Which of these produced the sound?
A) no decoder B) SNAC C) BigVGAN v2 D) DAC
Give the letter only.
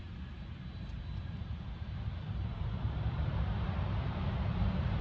C